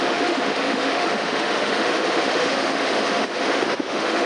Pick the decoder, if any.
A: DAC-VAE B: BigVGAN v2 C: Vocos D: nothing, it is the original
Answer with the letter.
A